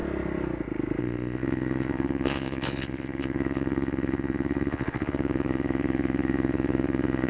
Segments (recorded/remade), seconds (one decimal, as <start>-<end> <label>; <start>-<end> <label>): 0.0-1.0 recorded; 1.0-7.3 remade